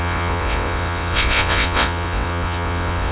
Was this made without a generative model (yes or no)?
no